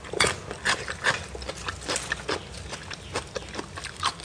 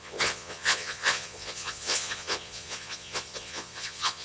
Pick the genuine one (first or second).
first